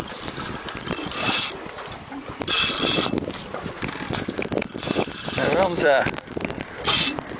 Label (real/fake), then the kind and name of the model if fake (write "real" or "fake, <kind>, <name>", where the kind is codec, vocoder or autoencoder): real